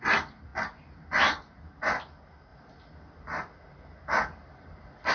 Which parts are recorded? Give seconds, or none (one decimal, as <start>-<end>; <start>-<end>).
0.0-5.1